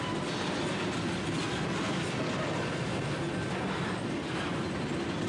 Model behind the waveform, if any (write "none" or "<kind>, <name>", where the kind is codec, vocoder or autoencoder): none